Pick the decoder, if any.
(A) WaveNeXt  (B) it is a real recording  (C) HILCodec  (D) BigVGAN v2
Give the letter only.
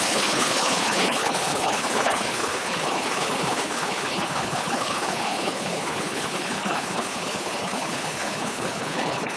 C